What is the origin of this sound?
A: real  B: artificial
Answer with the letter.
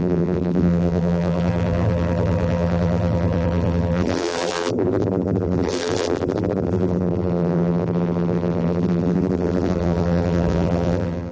B